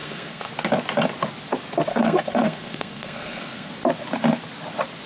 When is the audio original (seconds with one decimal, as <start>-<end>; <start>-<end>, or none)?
0.5-1.9; 3.7-5.1